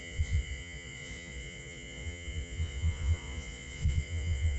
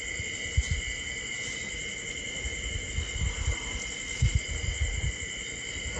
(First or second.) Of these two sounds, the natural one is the second